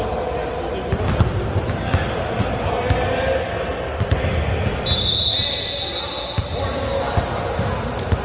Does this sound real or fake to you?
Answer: real